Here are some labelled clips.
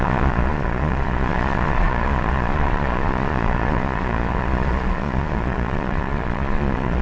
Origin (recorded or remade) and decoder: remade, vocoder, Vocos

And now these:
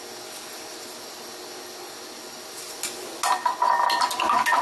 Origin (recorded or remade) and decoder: recorded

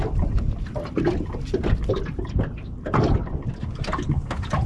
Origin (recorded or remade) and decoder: recorded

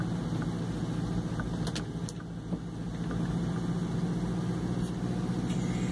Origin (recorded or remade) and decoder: recorded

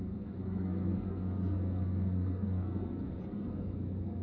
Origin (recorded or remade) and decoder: remade, codec, SNAC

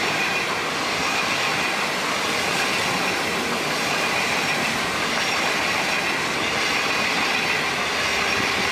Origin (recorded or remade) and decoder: recorded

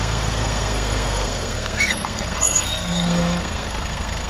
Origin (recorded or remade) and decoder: remade, codec, SNAC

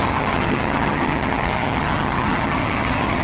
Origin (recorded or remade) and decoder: remade, vocoder, HiFi-GAN